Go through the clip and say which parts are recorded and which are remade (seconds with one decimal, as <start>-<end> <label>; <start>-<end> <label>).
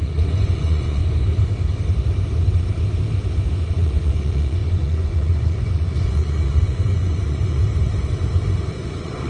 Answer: 0.0-1.0 remade; 1.0-3.6 recorded; 3.6-7.6 remade; 7.6-8.7 recorded; 8.7-9.3 remade